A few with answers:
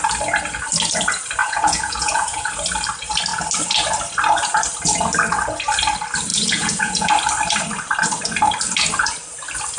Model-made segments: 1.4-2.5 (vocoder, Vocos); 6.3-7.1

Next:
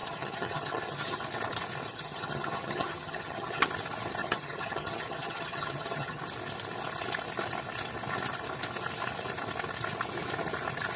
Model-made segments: 0.0-1.2 (vocoder, HiFi-GAN); 1.9-3.7; 4.2-6.2

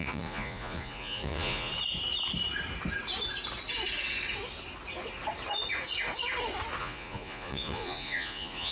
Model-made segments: 0.0-1.7 (vocoder, Vocos); 6.8-8.7

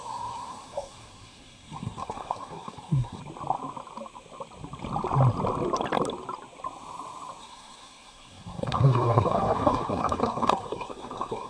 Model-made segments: 0.0-3.2 (codec, SNAC); 7.4-11.5

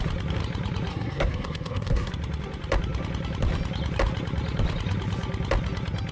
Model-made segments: 0.9-2.1 (codec, SNAC)

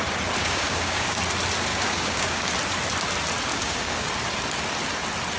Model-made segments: 0.4-1.2 (codec, DAC); 1.7-2.5; 3.5-4.1

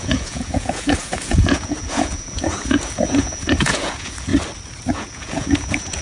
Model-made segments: 0.0-4.3 (vocoder, Vocos); 4.9-6.0

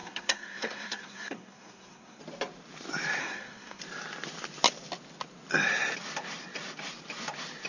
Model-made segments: 0.0-2.2 (codec, SNAC); 3.2-3.8